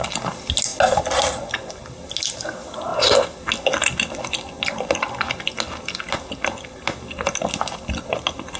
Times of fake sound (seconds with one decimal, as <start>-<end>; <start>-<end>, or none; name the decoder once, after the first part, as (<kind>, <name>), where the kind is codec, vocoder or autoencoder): none